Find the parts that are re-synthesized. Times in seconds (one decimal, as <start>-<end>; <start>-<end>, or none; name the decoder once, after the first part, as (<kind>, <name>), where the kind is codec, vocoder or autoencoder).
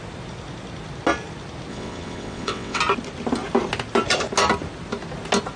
1.7-2.8 (vocoder, WaveNeXt)